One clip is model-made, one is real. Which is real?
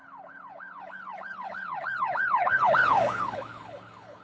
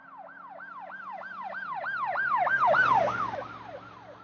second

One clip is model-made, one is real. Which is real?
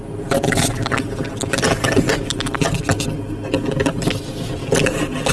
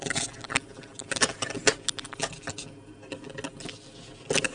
second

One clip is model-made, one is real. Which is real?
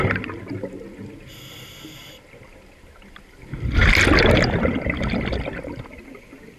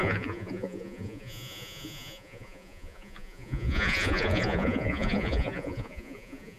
first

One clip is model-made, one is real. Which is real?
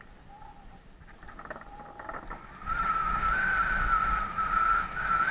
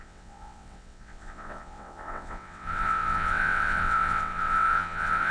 first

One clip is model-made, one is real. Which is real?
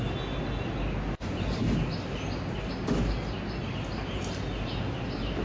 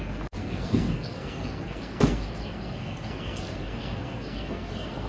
first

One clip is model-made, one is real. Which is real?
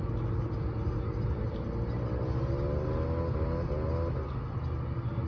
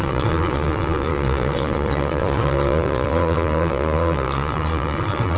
first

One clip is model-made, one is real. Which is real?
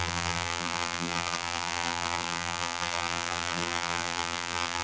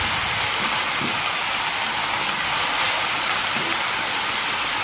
second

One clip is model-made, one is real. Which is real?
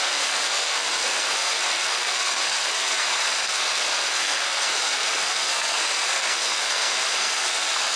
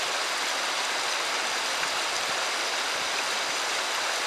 second